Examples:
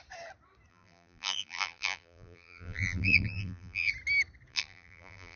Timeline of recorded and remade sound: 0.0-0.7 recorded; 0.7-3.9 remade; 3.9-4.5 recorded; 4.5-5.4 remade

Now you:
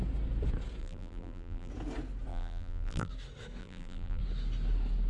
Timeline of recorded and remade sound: 0.0-0.8 recorded; 0.8-1.7 remade; 1.7-2.3 recorded; 2.3-3.1 remade; 3.1-3.6 recorded; 3.6-4.2 remade; 4.2-5.1 recorded

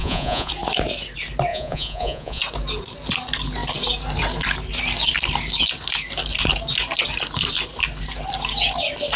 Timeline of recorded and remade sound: 0.0-0.5 remade; 0.5-1.5 recorded; 1.5-2.4 remade; 2.4-9.2 recorded